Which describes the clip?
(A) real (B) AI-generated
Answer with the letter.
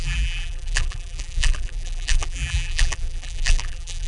B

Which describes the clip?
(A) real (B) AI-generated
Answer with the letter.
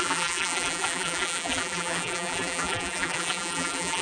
B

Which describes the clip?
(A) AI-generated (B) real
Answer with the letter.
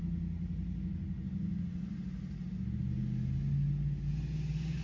B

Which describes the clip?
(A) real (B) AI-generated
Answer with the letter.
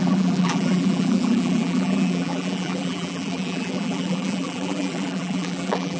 B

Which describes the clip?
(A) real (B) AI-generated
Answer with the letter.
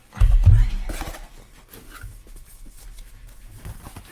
A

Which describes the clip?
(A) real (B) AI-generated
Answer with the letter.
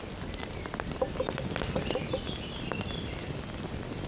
B